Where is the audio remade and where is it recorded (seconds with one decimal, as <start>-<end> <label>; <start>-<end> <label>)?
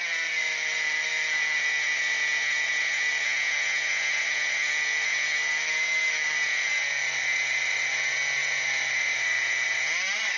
0.0-10.4 recorded